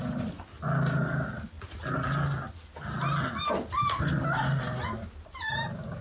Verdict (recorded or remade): recorded